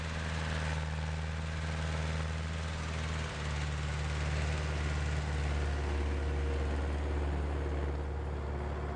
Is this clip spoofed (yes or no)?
no